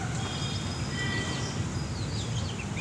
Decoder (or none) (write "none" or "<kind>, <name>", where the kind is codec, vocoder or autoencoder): none